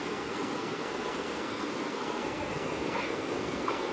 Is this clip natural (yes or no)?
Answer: no